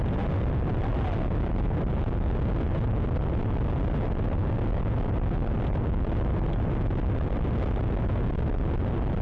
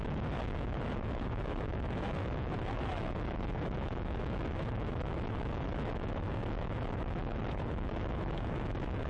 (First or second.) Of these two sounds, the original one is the first